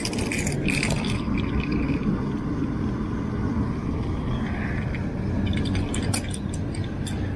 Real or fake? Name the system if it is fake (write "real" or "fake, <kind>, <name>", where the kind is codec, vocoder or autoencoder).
real